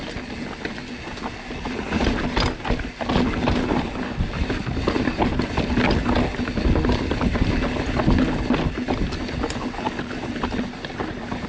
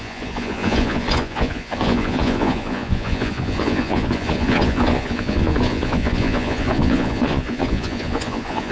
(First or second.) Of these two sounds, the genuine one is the first